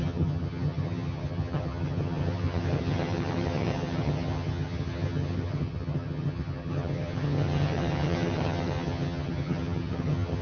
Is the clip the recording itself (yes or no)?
no